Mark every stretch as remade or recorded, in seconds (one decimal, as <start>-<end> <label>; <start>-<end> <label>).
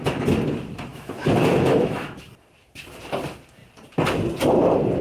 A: 0.0-0.9 recorded; 0.9-2.3 remade; 2.3-5.0 recorded